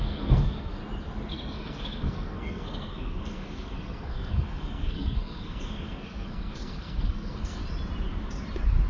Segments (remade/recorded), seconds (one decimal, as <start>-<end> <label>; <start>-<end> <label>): 0.0-0.8 remade; 0.8-1.3 recorded; 1.3-7.6 remade; 7.6-8.9 recorded